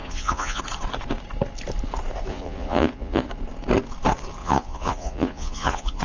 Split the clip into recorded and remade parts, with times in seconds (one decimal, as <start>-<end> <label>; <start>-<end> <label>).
0.0-0.6 remade; 0.6-2.3 recorded; 2.3-3.3 remade; 3.3-4.4 recorded; 4.4-6.0 remade